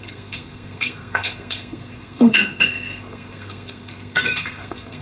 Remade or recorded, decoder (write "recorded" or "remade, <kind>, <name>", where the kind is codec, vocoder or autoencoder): remade, codec, SNAC